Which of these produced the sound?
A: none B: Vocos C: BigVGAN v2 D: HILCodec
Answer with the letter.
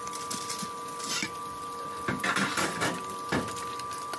A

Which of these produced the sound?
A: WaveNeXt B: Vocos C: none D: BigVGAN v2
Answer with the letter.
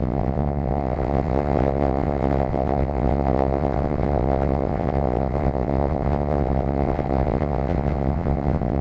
A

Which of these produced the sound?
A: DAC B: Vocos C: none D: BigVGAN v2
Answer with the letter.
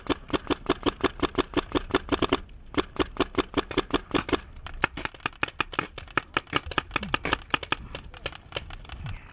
C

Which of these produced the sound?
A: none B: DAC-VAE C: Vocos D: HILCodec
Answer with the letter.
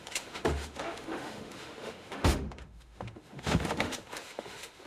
B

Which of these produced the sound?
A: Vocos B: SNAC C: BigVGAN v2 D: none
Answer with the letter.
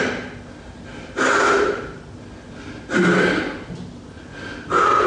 D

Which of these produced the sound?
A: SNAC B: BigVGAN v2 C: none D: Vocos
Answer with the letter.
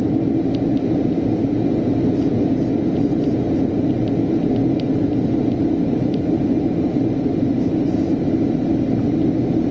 C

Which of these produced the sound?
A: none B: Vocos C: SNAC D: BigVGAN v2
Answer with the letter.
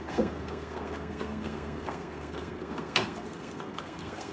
C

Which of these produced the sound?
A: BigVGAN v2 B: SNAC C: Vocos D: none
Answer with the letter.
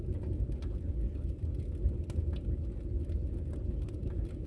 D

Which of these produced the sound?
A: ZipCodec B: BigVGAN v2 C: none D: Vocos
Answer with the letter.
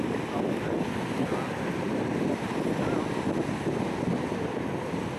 C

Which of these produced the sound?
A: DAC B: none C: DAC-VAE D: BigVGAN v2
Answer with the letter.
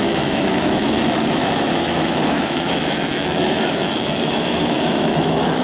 C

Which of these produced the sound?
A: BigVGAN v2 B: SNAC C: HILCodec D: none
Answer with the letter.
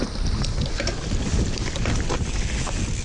D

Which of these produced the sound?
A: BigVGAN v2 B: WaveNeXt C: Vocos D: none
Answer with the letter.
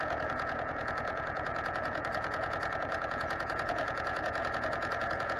C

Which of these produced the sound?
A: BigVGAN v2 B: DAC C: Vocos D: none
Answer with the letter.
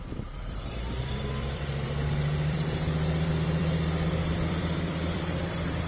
A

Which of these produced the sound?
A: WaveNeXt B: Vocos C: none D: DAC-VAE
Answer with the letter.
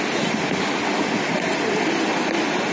C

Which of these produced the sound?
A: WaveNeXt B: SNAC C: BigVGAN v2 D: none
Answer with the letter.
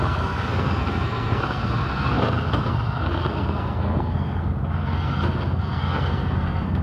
B